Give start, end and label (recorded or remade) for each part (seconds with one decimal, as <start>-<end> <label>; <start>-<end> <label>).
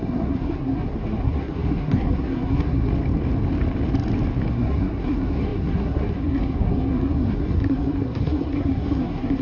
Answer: 0.0-2.9 remade; 2.9-4.5 recorded; 4.5-9.4 remade